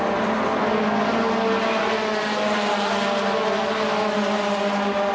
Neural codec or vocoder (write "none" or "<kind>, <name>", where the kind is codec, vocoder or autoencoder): none